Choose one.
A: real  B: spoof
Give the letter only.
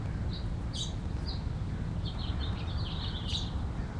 A